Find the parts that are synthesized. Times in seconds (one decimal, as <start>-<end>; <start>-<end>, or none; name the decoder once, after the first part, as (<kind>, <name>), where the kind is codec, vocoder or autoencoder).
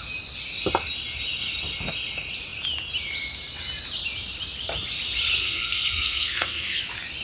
5.4-6.8 (codec, SNAC)